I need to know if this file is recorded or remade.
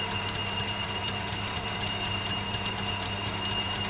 remade